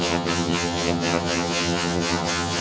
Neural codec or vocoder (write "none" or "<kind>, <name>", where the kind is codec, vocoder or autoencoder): vocoder, HiFi-GAN